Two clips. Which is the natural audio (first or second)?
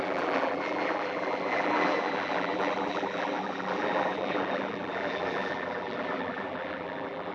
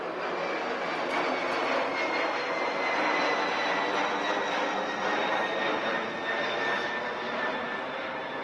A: second